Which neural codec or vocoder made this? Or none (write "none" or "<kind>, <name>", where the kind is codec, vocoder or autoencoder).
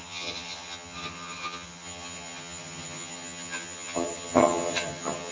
vocoder, HiFi-GAN